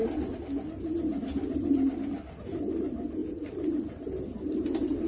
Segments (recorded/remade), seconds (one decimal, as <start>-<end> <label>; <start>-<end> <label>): 0.0-3.2 recorded; 3.2-5.1 remade